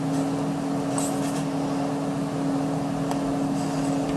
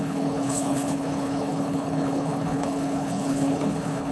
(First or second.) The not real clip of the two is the second